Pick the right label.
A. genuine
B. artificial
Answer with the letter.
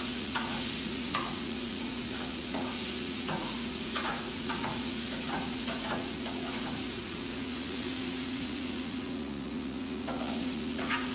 B